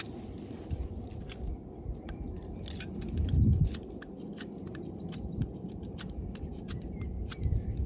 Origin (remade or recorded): remade